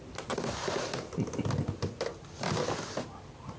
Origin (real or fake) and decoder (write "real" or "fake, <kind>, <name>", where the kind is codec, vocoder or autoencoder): real